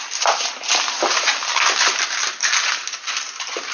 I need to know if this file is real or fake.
real